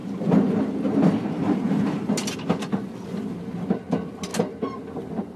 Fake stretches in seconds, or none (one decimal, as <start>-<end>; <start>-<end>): none